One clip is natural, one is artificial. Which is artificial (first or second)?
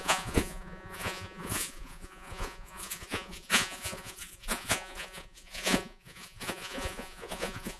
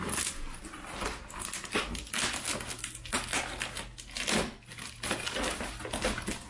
first